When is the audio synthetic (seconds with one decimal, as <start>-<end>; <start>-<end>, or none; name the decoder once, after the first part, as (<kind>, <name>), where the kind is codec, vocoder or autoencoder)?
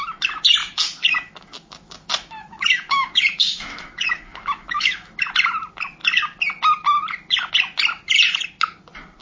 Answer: 0.6-5.3 (autoencoder, DAC-VAE)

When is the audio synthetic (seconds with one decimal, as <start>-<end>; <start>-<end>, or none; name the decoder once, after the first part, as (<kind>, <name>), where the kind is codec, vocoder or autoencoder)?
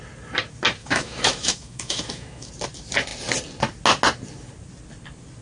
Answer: 0.8-2.5 (autoencoder, DAC-VAE)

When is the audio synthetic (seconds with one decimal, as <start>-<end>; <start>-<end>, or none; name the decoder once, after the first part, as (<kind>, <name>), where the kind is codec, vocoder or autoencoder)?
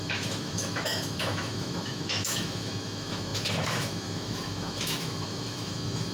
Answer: 0.0-6.1 (autoencoder, DAC-VAE)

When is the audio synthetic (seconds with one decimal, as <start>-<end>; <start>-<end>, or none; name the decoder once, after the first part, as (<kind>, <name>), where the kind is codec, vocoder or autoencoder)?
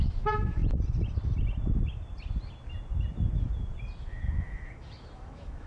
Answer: 0.0-0.6 (autoencoder, DAC-VAE); 4.0-5.7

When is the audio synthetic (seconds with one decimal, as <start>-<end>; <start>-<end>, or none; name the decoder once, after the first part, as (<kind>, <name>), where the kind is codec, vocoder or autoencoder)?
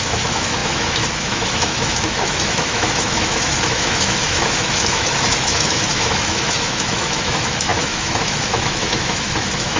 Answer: 0.0-9.8 (autoencoder, DAC-VAE)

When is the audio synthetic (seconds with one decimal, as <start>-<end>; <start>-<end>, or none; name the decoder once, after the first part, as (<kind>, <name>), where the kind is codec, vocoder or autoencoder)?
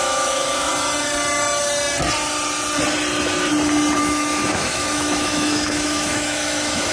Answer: 0.0-0.7 (autoencoder, DAC-VAE); 4.0-6.9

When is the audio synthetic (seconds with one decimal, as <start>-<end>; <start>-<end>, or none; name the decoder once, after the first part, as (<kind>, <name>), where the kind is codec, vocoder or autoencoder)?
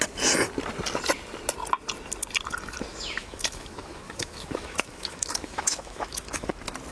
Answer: 2.9-6.5 (autoencoder, DAC-VAE)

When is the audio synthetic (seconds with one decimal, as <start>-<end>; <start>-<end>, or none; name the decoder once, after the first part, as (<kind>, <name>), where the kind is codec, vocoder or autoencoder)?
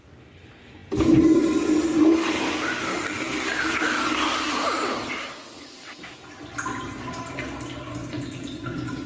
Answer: none